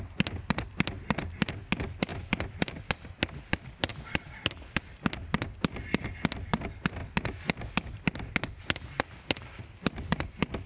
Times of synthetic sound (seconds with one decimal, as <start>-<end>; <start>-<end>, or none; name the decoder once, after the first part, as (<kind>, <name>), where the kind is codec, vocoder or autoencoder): 2.1-2.7 (vocoder, BigVGAN v2); 3.9-4.8